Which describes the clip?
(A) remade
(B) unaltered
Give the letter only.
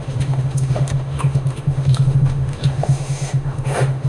A